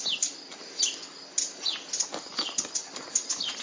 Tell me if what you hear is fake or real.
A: real